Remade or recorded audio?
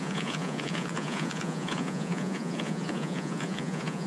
remade